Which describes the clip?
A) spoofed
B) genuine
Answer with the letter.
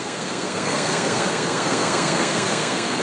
A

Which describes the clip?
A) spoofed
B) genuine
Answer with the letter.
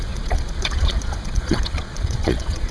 A